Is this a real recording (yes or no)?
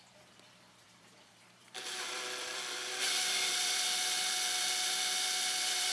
no